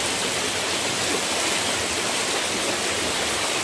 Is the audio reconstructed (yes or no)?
no